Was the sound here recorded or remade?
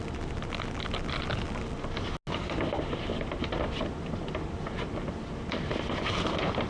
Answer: recorded